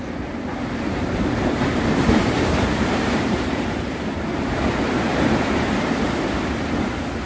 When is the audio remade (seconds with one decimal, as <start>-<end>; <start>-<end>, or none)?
0.5-3.8; 5.1-5.7